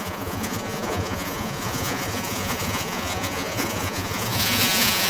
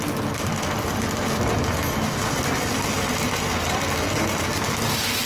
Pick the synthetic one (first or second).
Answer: first